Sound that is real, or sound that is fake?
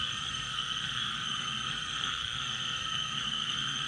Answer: fake